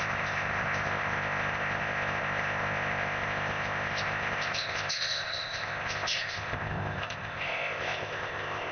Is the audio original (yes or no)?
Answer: no